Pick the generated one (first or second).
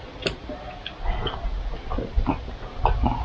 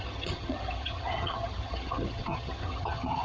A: second